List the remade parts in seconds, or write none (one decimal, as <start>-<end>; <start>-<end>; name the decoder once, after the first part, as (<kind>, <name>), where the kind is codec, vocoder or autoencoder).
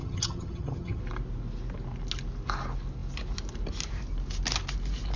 0.0-1.0 (vocoder, HiFi-GAN)